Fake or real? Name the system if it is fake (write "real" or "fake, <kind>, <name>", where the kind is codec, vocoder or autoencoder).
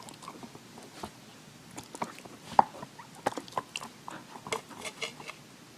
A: real